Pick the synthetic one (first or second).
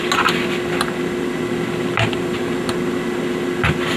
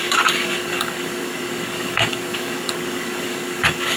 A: second